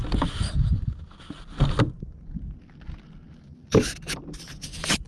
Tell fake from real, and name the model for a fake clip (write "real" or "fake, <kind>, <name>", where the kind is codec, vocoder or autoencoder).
real